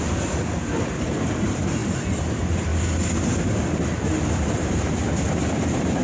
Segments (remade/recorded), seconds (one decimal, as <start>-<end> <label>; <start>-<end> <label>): 0.0-2.7 remade; 2.7-4.3 recorded; 4.3-6.0 remade